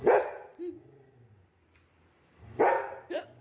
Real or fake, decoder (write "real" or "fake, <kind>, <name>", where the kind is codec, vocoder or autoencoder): real